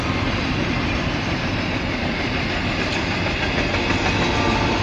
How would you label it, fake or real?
real